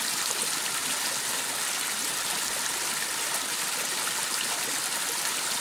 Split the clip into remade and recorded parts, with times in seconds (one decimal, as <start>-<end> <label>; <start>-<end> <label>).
0.0-5.6 recorded